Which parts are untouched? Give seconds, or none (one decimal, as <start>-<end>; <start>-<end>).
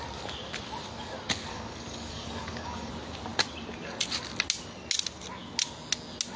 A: 0.0-1.5; 2.9-6.4